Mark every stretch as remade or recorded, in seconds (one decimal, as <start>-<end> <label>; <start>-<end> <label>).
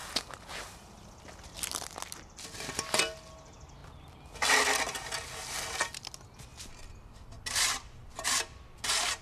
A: 0.0-9.2 recorded